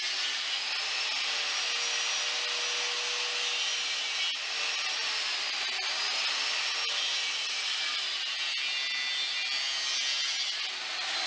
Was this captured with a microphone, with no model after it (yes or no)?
yes